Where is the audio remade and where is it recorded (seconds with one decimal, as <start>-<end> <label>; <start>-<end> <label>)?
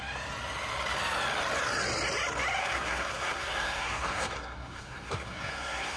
0.0-2.6 recorded; 2.6-6.0 remade